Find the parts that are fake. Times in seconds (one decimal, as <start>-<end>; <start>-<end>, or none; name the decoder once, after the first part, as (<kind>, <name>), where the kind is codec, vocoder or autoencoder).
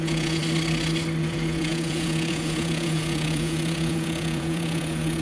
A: 0.0-0.4 (vocoder, Vocos); 1.2-5.2